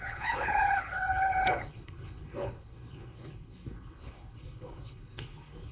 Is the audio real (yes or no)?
no